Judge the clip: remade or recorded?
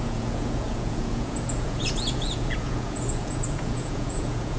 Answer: remade